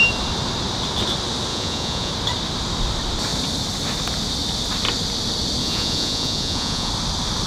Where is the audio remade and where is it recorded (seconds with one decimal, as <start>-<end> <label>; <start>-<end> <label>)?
0.0-1.5 recorded; 1.5-2.1 remade; 2.1-5.6 recorded; 5.6-6.9 remade; 6.9-7.5 recorded